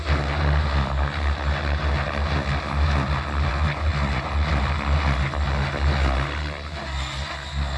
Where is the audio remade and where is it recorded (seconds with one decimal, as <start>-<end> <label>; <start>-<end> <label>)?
0.0-3.5 recorded; 3.5-4.5 remade; 4.5-7.8 recorded